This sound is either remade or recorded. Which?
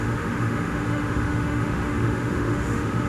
remade